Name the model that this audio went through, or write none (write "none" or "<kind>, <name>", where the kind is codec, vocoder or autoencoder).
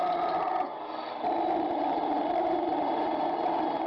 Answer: vocoder, BigVGAN v2